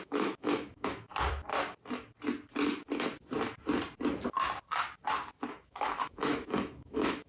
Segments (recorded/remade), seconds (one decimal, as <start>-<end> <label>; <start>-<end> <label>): 0.0-1.1 remade; 1.1-5.4 recorded; 5.4-7.3 remade